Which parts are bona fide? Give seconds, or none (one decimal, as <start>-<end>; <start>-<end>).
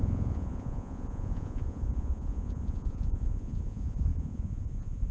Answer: none